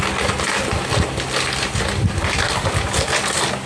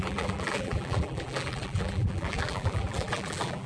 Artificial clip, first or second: second